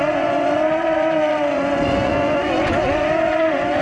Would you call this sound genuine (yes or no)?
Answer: no